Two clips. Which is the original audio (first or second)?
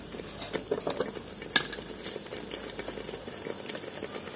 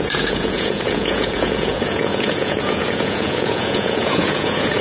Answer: first